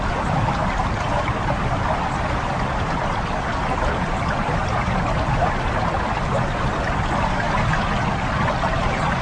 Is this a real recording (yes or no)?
yes